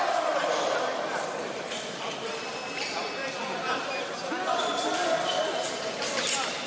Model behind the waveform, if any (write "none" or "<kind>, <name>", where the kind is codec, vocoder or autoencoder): none